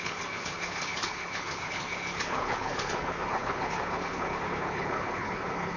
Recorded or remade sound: remade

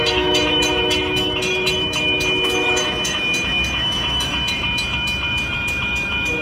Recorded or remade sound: remade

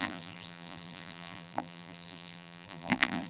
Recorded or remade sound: remade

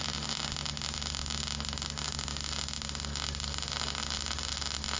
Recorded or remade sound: recorded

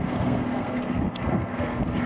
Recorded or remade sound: remade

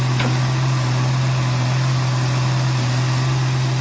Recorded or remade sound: recorded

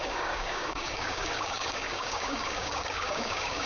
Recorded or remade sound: remade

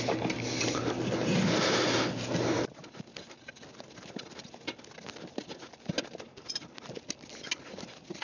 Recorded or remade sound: recorded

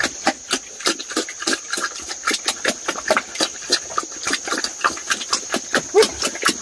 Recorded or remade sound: recorded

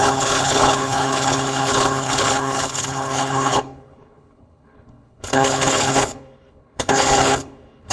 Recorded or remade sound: remade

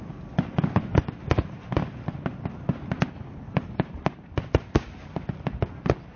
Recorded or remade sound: recorded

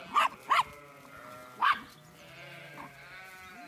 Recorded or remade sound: recorded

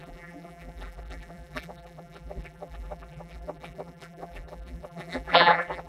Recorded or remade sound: remade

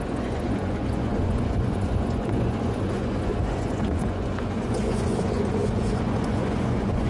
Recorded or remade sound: remade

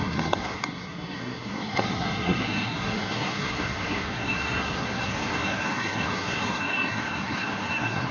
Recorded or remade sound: remade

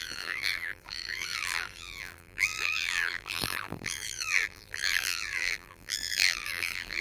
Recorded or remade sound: remade